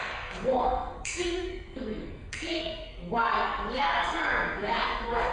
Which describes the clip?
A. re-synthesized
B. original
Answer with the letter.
A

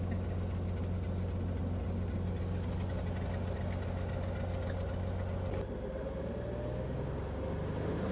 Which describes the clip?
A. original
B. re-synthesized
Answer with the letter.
A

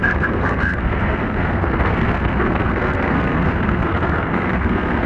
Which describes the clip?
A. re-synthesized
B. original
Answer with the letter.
A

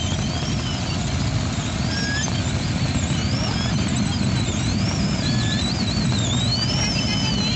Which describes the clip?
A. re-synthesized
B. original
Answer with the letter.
B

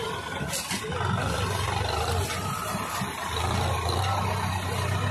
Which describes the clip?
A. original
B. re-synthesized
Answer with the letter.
A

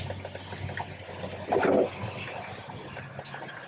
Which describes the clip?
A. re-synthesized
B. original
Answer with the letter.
B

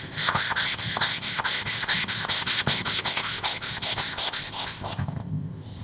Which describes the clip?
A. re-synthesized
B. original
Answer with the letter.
A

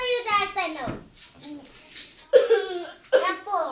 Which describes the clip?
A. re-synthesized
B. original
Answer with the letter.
B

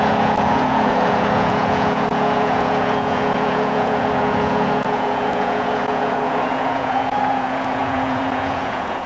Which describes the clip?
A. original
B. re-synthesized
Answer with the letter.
B